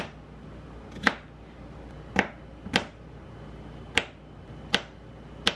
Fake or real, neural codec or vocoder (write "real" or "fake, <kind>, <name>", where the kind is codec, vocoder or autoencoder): real